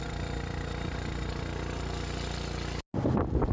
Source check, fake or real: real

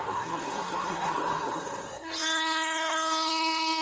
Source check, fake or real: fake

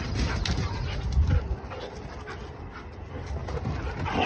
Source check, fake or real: real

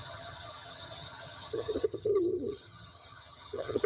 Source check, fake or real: fake